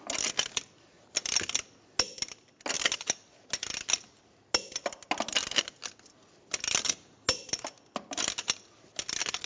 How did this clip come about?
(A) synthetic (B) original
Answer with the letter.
B